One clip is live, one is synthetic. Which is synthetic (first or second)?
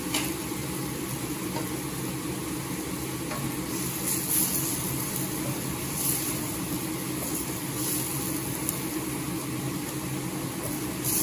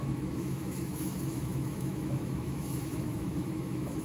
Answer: second